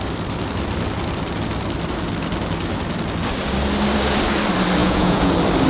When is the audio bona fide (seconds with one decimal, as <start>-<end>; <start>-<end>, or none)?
0.0-4.8; 5.3-5.7